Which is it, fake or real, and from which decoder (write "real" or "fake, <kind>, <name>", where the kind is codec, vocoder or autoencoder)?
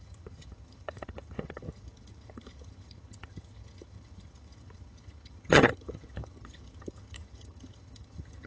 fake, vocoder, HiFi-GAN